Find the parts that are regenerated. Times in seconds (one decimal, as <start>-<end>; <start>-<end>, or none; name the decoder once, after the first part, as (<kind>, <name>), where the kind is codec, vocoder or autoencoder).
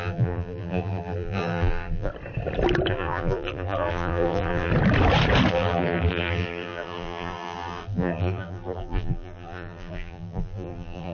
0.0-2.1 (vocoder, BigVGAN v2); 2.9-4.7; 5.5-11.1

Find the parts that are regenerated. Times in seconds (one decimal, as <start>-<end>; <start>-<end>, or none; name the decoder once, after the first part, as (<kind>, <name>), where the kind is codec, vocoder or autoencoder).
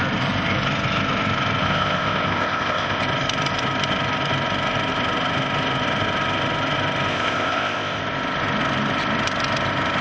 1.6-3.0 (codec, ZipCodec); 7.1-8.0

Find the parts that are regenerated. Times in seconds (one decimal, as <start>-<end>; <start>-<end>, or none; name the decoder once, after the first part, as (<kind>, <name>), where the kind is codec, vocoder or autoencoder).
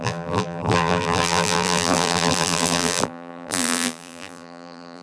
0.0-5.0 (vocoder, BigVGAN v2)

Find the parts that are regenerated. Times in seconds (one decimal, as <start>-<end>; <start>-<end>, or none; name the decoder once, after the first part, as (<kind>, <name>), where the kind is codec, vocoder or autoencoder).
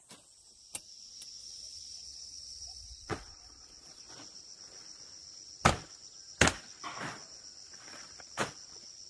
1.4-4.0 (vocoder, Vocos)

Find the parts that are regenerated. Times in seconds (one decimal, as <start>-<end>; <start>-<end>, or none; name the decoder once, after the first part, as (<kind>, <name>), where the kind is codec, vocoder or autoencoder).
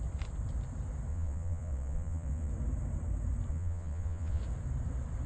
1.1-2.5 (vocoder, Vocos); 3.5-4.4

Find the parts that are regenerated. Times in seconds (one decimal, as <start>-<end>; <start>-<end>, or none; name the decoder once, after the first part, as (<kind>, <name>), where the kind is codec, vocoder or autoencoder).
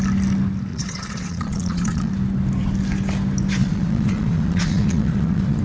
0.7-2.1 (vocoder, Vocos); 3.6-5.6